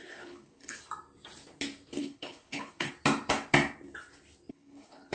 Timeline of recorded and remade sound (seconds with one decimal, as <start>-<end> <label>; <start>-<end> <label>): 0.0-0.8 remade; 0.8-2.0 recorded; 2.0-2.9 remade; 2.9-4.5 recorded; 4.5-5.1 remade